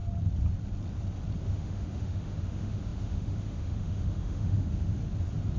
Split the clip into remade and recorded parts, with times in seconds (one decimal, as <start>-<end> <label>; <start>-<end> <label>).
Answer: 0.0-1.4 recorded; 1.4-5.0 remade; 5.0-5.6 recorded